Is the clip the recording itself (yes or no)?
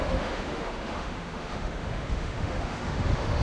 no